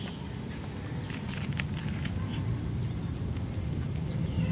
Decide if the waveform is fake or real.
real